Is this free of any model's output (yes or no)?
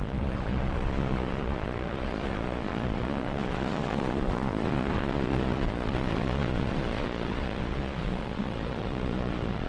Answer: no